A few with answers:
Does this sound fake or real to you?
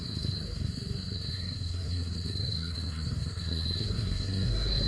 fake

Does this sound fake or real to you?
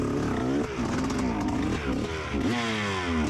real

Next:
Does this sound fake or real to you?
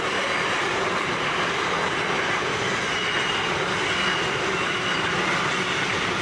fake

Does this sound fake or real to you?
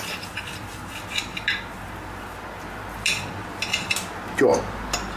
real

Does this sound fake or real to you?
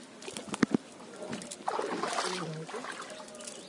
real